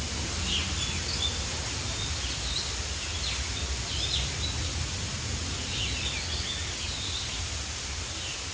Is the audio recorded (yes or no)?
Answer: yes